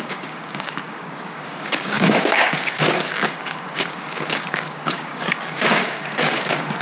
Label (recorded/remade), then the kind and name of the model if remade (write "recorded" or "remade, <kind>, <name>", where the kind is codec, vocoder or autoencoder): remade, codec, DAC